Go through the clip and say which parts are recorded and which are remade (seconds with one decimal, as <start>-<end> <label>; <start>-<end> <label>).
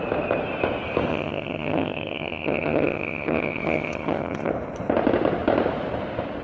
0.0-1.1 recorded; 1.1-4.5 remade; 4.5-6.4 recorded